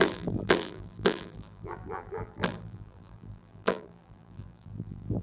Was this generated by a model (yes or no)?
yes